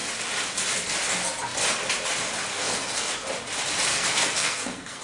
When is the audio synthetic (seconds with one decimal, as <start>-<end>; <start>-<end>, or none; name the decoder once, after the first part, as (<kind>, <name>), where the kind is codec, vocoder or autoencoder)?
2.5-3.1 (codec, SNAC); 3.9-5.0